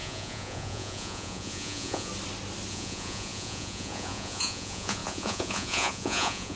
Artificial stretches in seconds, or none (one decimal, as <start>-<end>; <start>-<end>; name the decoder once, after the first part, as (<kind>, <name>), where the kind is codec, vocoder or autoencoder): 0.0-2.1 (vocoder, Vocos); 2.7-6.6